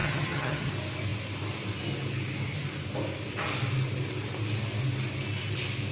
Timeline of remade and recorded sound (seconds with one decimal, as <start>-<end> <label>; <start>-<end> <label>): 0.0-0.7 remade; 0.7-5.9 recorded